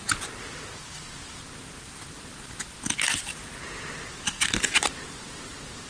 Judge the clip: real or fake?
real